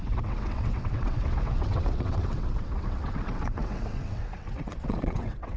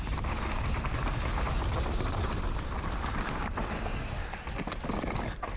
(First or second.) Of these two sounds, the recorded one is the second